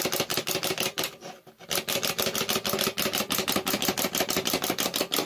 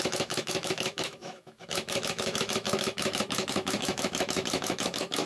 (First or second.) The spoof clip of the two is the second